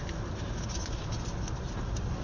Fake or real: real